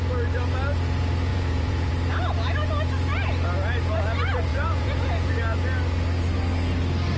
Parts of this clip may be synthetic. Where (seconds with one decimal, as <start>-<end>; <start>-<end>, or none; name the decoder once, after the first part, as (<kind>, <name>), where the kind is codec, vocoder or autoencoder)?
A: 1.3-1.9 (vocoder, Vocos); 4.5-5.3